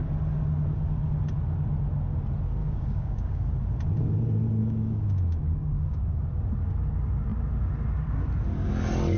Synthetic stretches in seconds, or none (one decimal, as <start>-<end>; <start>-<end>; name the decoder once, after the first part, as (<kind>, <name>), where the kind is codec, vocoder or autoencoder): 2.6-3.4 (codec, DAC); 4.6-6.0